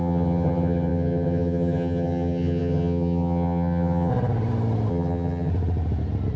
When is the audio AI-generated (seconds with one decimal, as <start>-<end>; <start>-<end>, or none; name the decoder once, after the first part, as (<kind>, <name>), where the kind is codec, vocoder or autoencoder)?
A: 0.0-4.1 (vocoder, HiFi-GAN); 4.9-5.5